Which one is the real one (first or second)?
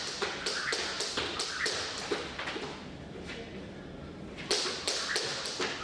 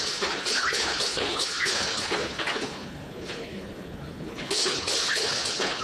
first